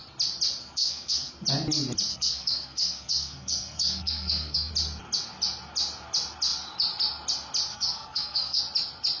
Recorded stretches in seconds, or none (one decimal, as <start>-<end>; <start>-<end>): 0.0-0.6; 1.3-2.1; 4.7-7.7; 8.6-9.2